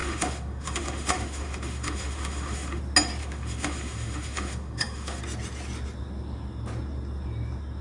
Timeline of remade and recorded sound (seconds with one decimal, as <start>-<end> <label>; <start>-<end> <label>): 0.0-2.8 remade; 2.8-3.2 recorded; 3.2-5.2 remade; 5.2-7.8 recorded